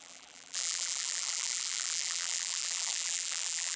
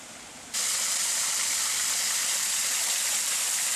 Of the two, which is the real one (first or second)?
second